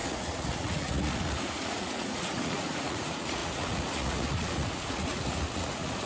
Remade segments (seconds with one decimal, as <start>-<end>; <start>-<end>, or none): 0.0-6.1